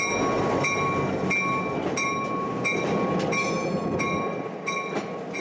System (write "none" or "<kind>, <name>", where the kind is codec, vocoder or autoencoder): none